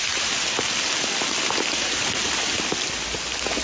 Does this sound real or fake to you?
real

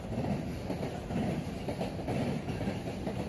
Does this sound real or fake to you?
real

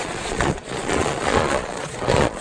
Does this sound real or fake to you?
fake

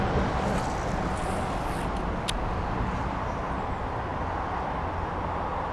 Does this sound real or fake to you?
real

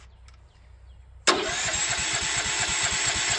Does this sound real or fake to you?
real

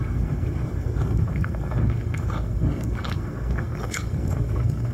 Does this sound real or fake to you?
fake